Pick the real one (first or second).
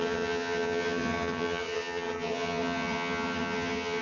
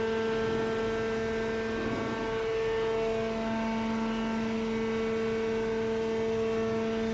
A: second